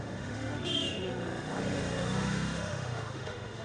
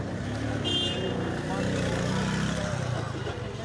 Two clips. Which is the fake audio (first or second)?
first